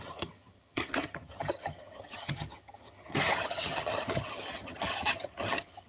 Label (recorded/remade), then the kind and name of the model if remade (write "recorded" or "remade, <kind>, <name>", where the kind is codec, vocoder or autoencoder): remade, vocoder, HiFi-GAN